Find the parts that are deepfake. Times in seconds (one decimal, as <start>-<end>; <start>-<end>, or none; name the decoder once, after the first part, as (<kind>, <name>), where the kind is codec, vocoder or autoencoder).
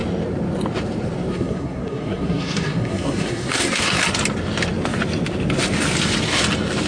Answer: 1.3-4.0 (codec, SNAC)